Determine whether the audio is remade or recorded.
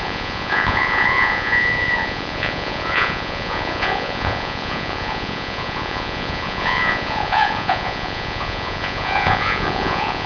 remade